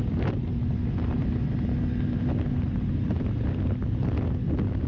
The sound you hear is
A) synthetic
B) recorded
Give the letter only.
B